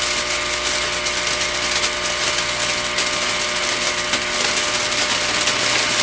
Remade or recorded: recorded